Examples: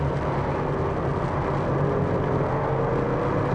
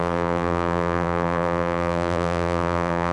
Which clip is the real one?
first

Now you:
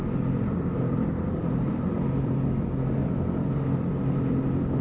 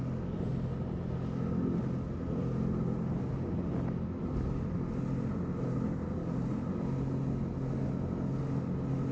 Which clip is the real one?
second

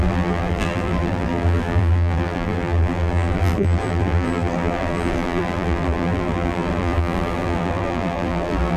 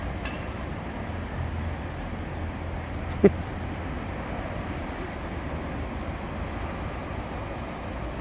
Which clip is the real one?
second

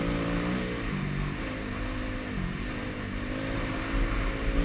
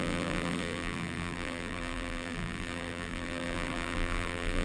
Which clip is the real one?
first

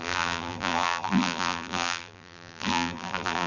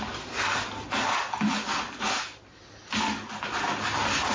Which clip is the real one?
second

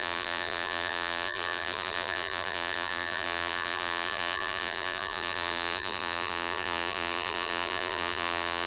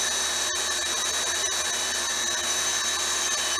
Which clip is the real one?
second